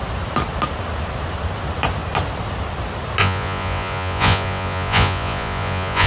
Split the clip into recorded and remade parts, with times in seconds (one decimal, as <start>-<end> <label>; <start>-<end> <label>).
0.0-3.2 recorded; 3.2-6.1 remade